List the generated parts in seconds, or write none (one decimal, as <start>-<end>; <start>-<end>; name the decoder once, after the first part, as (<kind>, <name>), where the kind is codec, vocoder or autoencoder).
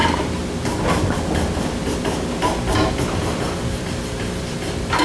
3.0-5.0 (vocoder, BigVGAN v2)